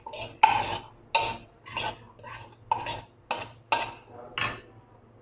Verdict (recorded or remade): recorded